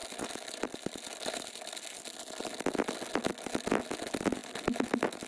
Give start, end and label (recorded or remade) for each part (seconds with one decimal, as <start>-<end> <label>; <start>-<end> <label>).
0.0-5.3 recorded